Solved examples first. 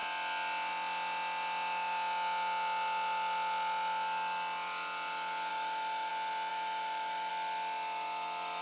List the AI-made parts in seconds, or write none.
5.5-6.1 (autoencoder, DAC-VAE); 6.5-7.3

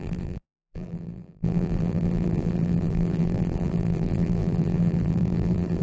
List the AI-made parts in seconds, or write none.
0.0-5.8 (vocoder, BigVGAN v2)

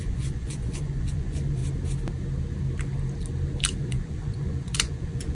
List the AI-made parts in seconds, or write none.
0.0-1.6 (vocoder, Vocos); 3.8-5.3

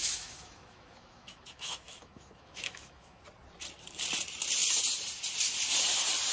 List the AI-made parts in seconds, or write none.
0.0-3.2 (autoencoder, DAC-VAE)

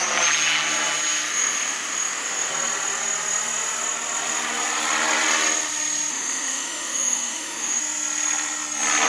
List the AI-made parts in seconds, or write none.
1.3-2.5 (autoencoder, DAC-VAE); 6.1-7.8

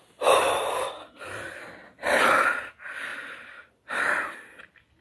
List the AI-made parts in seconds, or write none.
none

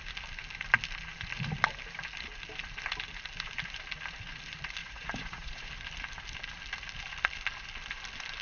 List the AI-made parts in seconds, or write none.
4.8-5.7 (vocoder, Vocos)